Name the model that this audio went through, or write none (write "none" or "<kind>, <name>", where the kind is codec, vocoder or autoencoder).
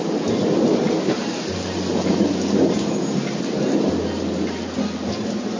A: none